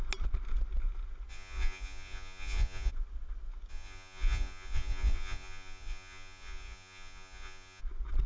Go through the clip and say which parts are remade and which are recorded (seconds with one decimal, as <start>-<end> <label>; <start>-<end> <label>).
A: 0.0-1.3 recorded; 1.3-2.9 remade; 2.9-3.7 recorded; 3.7-7.8 remade; 7.8-8.3 recorded